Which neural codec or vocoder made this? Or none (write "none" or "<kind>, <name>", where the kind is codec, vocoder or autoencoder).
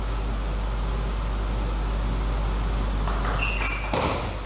none